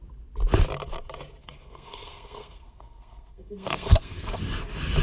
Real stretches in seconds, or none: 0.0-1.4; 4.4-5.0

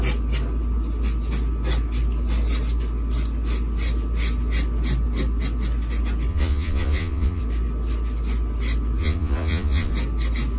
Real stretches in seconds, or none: 0.0-6.3; 7.4-9.0; 9.9-10.6

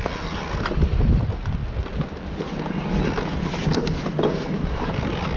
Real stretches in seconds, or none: 0.0-5.4

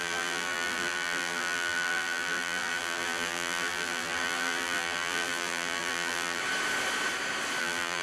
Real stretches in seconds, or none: 6.4-7.6